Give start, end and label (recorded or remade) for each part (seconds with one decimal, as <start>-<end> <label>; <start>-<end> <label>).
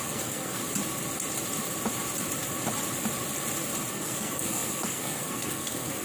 0.0-0.6 remade; 0.6-3.9 recorded; 3.9-6.0 remade